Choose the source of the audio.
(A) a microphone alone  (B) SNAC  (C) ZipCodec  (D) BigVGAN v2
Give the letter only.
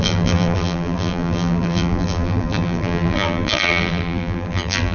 D